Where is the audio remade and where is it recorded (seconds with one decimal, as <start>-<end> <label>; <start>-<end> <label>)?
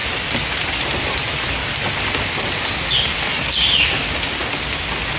0.0-5.2 recorded